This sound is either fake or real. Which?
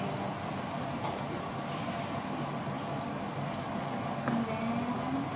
real